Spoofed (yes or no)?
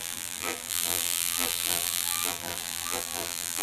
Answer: yes